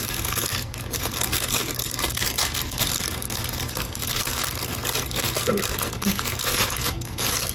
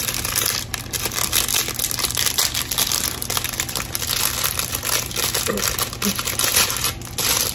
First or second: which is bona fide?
second